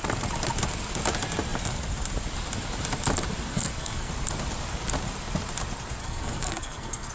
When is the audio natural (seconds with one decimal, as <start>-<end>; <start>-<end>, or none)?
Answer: 0.0-3.5; 4.1-6.0